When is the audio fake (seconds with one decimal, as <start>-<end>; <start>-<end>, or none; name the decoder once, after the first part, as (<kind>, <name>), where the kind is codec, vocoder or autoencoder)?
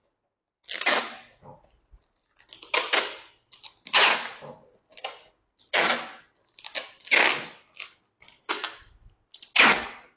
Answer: none